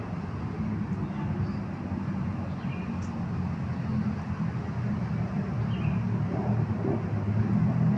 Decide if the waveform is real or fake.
real